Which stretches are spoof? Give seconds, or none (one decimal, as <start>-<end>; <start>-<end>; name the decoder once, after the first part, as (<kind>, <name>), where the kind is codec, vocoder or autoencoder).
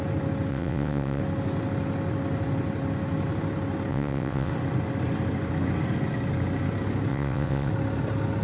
0.5-1.2 (vocoder, WaveNeXt); 3.9-4.5; 7.1-7.7